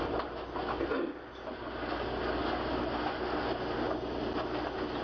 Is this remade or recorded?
recorded